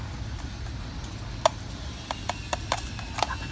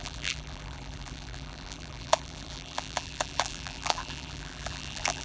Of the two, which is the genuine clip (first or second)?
first